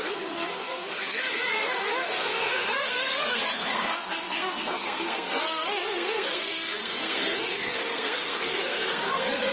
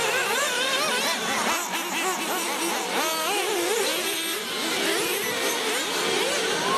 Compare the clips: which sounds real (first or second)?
second